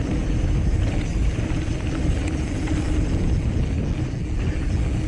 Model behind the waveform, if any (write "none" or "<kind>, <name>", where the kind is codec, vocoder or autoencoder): none